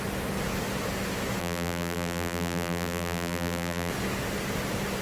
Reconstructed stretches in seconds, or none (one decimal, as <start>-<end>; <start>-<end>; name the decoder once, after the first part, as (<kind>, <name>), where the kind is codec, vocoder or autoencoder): 1.4-3.9 (vocoder, BigVGAN v2)